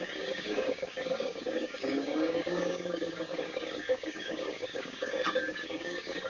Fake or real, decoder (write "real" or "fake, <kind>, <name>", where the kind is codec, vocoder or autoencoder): fake, codec, DAC